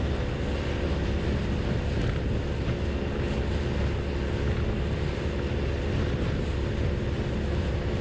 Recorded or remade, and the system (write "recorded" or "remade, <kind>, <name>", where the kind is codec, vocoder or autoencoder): recorded